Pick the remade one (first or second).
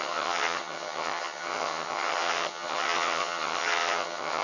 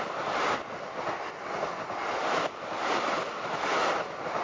first